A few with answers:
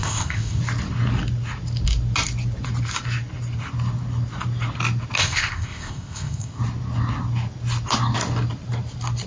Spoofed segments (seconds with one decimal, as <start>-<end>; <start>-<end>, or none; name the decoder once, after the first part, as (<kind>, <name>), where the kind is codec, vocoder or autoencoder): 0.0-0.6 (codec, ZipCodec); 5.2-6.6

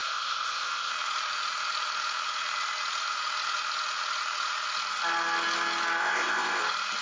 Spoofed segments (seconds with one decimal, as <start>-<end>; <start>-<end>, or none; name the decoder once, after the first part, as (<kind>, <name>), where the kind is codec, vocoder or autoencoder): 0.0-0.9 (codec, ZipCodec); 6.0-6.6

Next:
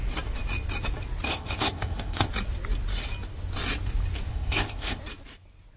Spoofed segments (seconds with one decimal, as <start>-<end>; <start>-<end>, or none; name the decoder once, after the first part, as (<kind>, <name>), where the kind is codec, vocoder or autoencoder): 1.3-2.3 (codec, ZipCodec); 4.3-5.0